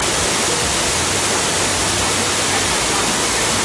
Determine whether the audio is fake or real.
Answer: real